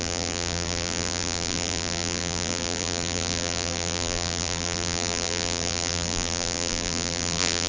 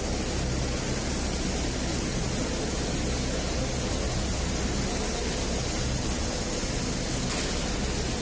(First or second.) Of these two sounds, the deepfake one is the first